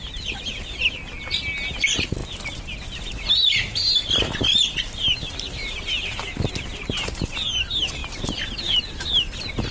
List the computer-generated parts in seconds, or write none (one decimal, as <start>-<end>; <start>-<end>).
none